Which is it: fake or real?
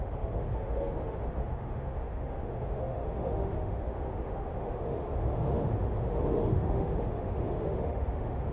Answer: fake